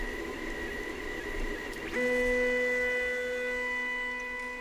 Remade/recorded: recorded